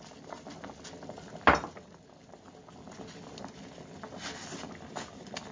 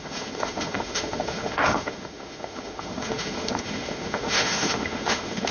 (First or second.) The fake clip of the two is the second